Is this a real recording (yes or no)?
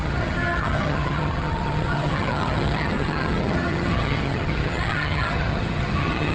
no